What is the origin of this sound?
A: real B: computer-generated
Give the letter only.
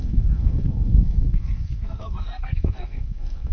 B